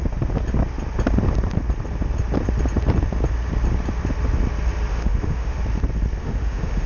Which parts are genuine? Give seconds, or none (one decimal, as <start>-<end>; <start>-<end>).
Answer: 0.0-4.9; 5.6-6.2

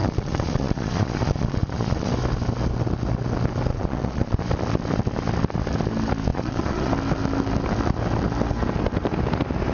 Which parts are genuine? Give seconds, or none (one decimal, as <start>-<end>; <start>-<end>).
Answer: 2.1-3.7; 4.4-6.3; 6.9-9.7

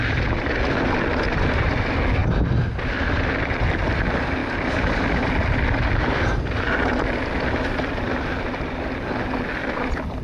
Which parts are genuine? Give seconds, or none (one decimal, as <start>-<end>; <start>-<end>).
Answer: 0.0-10.2

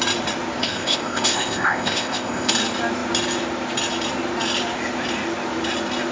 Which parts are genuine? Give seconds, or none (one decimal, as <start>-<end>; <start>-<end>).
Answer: 0.0-0.6; 2.5-6.1

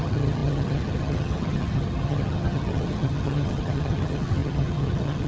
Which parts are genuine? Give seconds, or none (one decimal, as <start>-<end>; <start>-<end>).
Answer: none

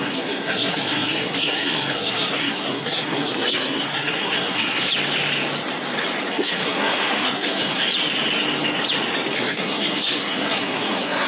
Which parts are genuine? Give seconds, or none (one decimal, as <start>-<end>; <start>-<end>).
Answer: 4.9-6.3; 7.8-9.3

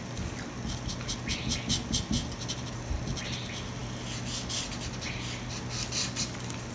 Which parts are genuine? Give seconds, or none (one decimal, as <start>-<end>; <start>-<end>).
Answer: 0.0-6.7